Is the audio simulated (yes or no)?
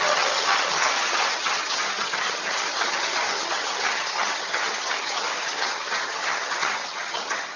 yes